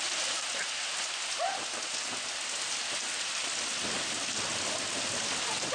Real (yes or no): yes